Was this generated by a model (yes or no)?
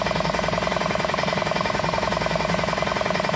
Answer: no